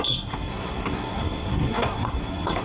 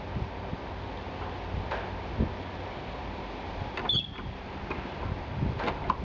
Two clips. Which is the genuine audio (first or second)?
second